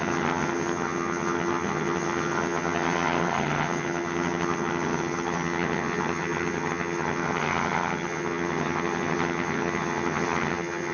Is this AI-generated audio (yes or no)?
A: yes